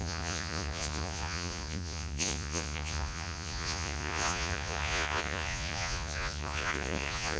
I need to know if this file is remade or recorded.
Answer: remade